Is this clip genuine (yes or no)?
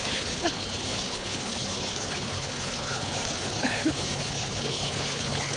no